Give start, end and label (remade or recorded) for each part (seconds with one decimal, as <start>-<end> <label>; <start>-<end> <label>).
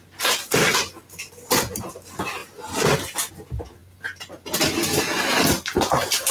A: 0.0-6.3 recorded